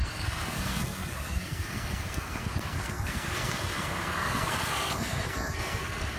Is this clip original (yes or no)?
no